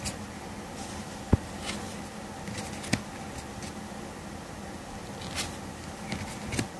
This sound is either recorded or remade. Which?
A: recorded